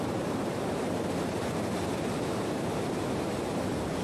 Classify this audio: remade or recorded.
remade